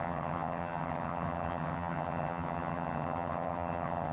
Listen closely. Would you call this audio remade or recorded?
remade